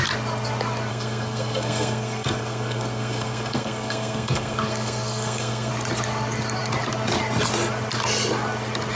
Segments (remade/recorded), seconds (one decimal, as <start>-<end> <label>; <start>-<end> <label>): 0.0-0.9 recorded; 0.9-5.7 remade; 5.7-9.0 recorded